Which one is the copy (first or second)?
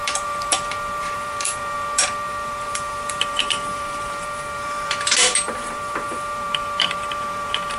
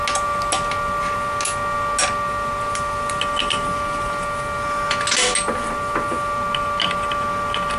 first